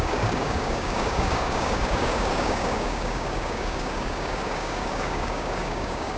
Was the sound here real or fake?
fake